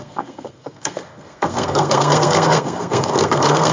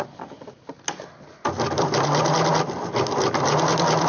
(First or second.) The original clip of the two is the second